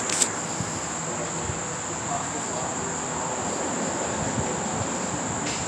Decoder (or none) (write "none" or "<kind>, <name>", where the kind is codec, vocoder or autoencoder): none